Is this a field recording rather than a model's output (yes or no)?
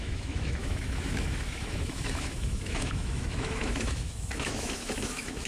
no